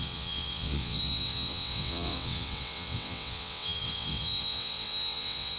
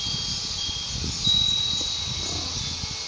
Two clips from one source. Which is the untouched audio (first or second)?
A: second